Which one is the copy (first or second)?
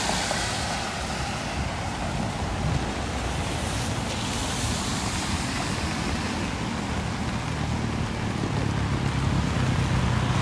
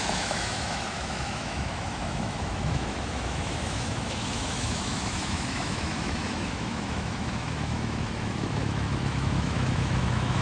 second